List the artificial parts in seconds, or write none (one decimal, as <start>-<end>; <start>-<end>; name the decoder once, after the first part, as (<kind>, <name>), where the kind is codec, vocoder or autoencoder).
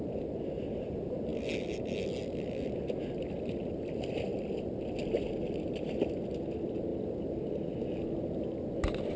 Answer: none